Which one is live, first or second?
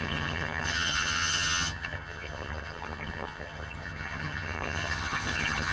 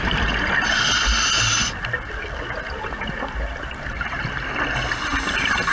second